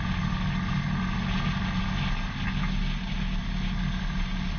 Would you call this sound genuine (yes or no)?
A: yes